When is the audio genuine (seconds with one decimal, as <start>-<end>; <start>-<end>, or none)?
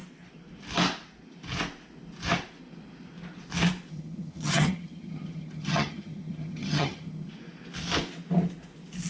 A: 0.0-3.9; 7.3-9.1